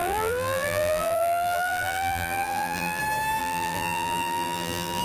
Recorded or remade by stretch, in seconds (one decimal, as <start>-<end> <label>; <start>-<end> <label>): 0.0-3.0 remade; 3.0-3.4 recorded; 3.4-5.0 remade